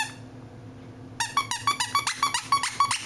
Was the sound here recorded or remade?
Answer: recorded